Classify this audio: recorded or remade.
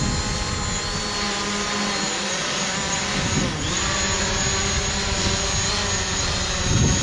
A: recorded